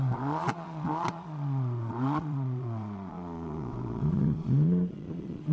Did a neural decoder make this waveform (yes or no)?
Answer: yes